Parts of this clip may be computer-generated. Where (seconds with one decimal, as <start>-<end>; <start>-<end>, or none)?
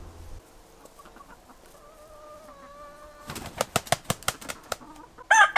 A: none